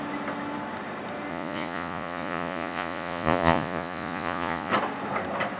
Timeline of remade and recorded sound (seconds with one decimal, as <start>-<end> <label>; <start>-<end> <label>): 0.0-1.3 recorded; 1.3-4.7 remade; 4.7-5.6 recorded